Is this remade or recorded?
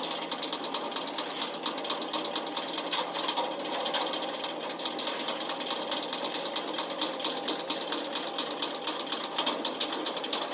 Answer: recorded